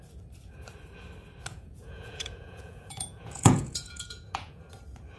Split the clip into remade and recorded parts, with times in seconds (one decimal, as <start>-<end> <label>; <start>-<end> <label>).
0.0-1.5 recorded; 1.5-4.6 remade; 4.6-5.2 recorded